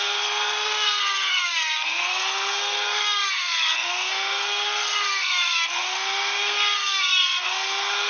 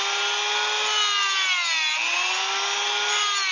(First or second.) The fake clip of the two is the first